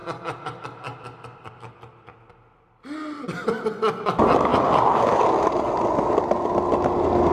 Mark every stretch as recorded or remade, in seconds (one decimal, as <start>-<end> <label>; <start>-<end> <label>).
0.0-7.3 recorded